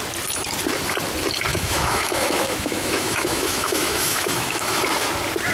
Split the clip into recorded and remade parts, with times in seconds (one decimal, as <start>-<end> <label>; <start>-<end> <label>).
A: 0.0-1.5 recorded; 1.5-4.8 remade; 4.8-5.5 recorded